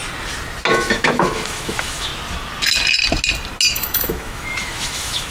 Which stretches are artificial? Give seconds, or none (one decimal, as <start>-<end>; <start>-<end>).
0.7-2.1; 3.7-5.3